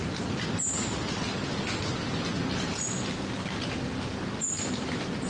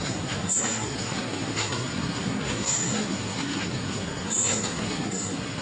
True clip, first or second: first